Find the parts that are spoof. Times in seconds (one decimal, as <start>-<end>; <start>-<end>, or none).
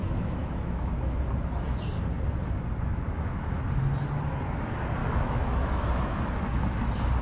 0.0-1.0; 2.9-3.6; 5.0-6.2